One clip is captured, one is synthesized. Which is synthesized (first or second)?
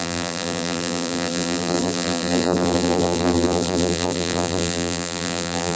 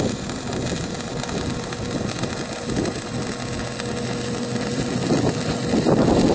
first